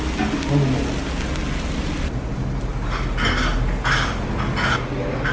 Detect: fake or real real